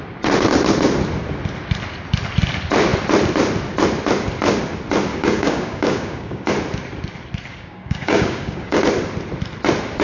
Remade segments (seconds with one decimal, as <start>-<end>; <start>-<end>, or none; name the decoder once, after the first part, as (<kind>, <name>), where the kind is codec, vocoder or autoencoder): 5.1-6.5 (codec, DAC); 7.5-8.8